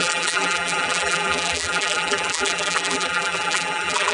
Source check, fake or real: fake